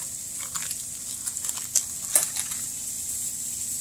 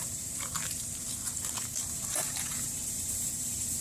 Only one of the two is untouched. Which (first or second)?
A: first